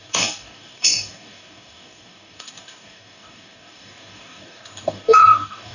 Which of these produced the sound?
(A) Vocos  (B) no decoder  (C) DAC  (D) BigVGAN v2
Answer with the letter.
C